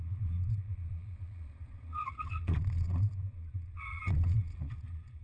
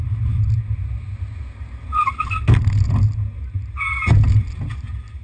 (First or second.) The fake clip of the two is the first